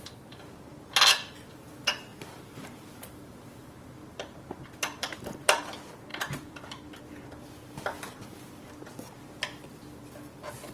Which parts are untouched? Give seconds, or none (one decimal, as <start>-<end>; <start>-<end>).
0.0-2.1; 5.6-6.1; 7.0-10.7